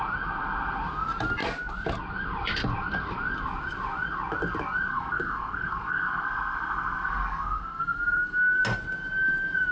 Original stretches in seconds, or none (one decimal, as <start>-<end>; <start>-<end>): 0.0-4.9; 8.6-9.7